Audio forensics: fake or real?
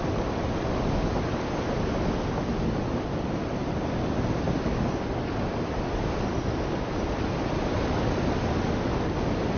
real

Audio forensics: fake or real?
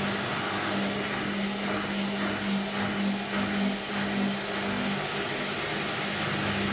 real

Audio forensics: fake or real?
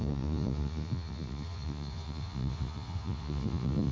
fake